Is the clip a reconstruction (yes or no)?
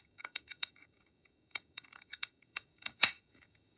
yes